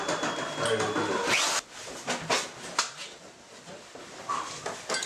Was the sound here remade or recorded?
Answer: recorded